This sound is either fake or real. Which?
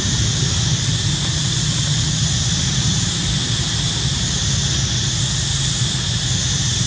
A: real